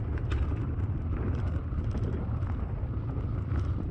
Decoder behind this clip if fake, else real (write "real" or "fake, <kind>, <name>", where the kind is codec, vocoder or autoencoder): real